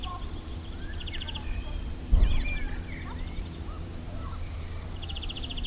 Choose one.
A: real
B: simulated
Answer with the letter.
B